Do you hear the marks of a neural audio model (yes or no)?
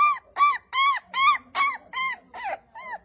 no